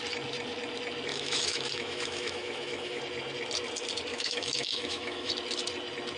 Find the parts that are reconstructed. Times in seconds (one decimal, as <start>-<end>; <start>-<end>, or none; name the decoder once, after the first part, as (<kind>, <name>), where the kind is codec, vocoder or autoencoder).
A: 1.1-3.0 (autoencoder, DAC-VAE); 4.1-5.3

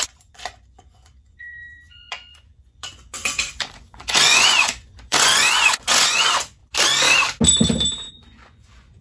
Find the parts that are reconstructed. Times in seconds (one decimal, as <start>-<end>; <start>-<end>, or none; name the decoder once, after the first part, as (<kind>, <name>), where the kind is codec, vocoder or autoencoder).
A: 0.0-6.6 (vocoder, Vocos); 8.1-9.0

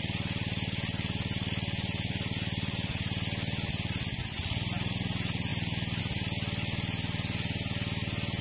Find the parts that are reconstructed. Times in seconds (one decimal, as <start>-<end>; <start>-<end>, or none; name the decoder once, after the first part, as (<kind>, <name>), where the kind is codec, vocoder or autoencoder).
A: none

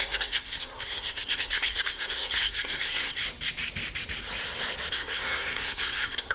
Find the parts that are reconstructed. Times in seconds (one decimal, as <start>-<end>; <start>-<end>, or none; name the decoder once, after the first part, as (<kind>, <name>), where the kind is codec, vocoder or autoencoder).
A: 0.0-3.2 (codec, SNAC); 4.9-6.3

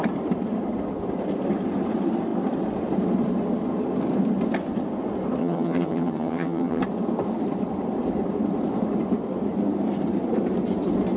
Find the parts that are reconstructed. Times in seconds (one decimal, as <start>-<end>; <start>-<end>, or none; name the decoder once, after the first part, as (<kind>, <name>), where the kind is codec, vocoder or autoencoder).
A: 5.4-6.8 (vocoder, HiFi-GAN)

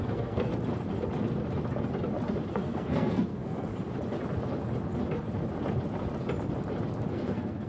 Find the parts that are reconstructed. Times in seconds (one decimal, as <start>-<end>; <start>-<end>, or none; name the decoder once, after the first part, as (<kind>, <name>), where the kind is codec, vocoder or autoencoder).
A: 0.0-0.5 (codec, SNAC); 2.5-3.7; 7.1-7.7